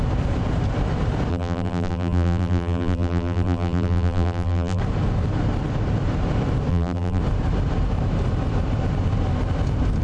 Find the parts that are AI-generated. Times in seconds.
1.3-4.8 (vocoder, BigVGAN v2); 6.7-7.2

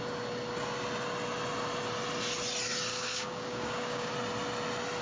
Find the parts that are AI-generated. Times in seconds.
2.9-4.1 (codec, DAC)

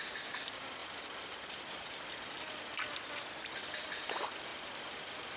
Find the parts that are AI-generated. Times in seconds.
none

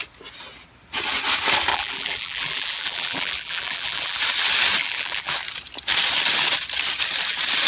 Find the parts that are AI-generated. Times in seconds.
1.7-4.2 (vocoder, BigVGAN v2); 4.8-5.3

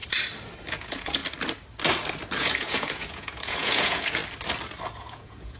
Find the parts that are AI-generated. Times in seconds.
0.7-1.2 (vocoder, Vocos); 2.4-4.2; 4.9-5.6